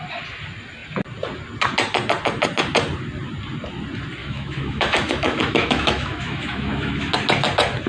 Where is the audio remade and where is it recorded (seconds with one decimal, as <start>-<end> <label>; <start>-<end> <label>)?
0.0-4.2 recorded; 4.2-7.1 remade; 7.1-7.9 recorded